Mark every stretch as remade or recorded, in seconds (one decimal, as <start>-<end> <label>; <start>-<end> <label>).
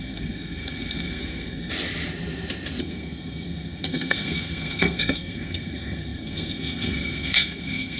0.0-1.7 remade; 1.7-2.8 recorded; 2.8-8.0 remade